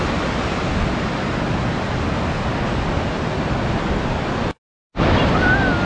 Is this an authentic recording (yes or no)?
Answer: yes